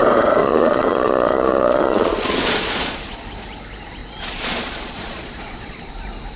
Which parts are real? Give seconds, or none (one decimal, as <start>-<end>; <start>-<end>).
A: 0.0-0.4; 3.0-4.0; 5.9-6.4